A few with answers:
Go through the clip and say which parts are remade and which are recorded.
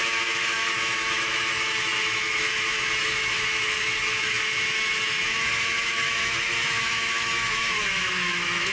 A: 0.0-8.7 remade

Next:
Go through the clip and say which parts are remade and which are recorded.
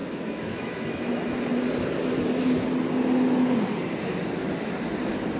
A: 0.0-1.1 remade; 1.1-5.4 recorded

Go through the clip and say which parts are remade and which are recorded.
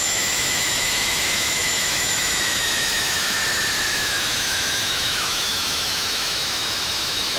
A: 0.0-3.4 remade; 3.4-3.9 recorded; 3.9-7.4 remade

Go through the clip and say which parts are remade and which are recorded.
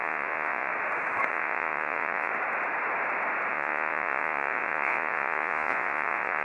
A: 0.0-0.7 remade; 0.7-1.3 recorded; 1.3-2.3 remade; 2.3-3.5 recorded; 3.5-6.4 remade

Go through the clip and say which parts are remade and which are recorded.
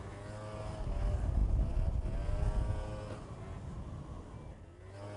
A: 0.0-5.2 recorded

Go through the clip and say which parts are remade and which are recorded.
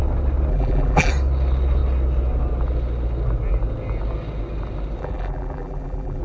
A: 0.0-0.5 recorded; 0.5-1.1 remade; 1.1-5.0 recorded; 5.0-6.2 remade